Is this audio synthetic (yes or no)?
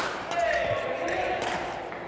no